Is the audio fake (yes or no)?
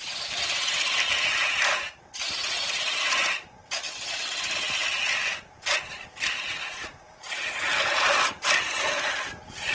no